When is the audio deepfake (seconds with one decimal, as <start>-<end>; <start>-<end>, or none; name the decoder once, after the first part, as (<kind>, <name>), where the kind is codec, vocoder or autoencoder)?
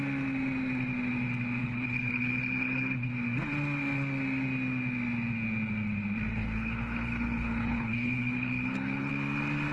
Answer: 1.6-3.1 (codec, HILCodec); 6.3-9.1